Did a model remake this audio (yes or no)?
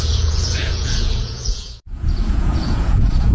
yes